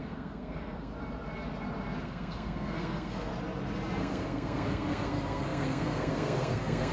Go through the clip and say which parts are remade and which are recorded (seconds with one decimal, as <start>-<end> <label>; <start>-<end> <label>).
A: 0.0-0.9 remade; 0.9-2.0 recorded; 2.0-3.3 remade; 3.3-4.0 recorded; 4.0-6.9 remade

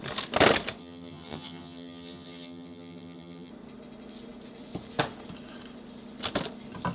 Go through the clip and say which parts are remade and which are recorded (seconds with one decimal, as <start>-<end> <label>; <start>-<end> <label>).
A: 0.0-0.8 recorded; 0.8-3.5 remade; 3.5-6.9 recorded

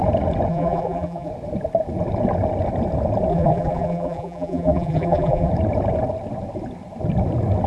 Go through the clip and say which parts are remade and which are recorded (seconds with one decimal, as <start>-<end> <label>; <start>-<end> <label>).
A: 0.0-0.5 recorded; 0.5-1.3 remade; 1.3-3.3 recorded; 3.3-5.5 remade; 5.5-7.7 recorded